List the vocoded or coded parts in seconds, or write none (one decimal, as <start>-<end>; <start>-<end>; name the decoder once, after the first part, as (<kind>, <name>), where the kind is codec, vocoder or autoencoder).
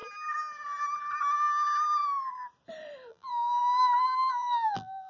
3.1-3.6 (vocoder, BigVGAN v2); 4.3-5.1